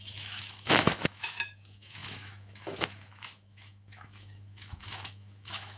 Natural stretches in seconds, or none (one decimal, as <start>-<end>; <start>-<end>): none